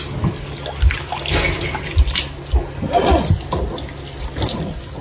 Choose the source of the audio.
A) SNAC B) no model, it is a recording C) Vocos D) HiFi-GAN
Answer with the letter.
B